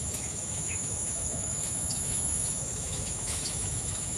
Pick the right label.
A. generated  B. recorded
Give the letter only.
A